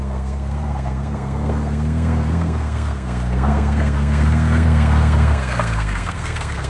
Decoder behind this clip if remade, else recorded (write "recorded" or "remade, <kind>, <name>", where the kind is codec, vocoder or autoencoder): remade, codec, SNAC